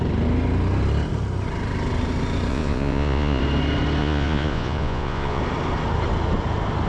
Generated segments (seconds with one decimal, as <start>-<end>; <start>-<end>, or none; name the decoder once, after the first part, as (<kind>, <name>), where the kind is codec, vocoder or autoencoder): 2.5-3.4 (vocoder, Vocos); 4.0-5.4